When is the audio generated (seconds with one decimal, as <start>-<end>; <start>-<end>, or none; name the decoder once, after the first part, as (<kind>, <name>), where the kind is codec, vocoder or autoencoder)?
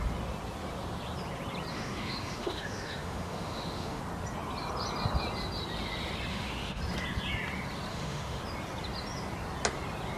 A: 1.7-4.0 (autoencoder, DAC-VAE); 6.3-6.8; 7.9-8.4